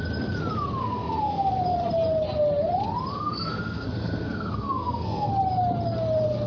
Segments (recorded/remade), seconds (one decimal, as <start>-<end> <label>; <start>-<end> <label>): 0.0-0.8 recorded; 0.8-1.5 remade; 1.5-3.1 recorded; 3.1-5.3 remade; 5.3-6.5 recorded